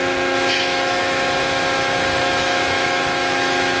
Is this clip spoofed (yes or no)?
yes